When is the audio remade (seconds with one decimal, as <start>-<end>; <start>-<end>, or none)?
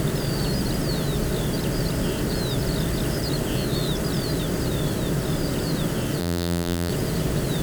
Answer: 6.2-6.9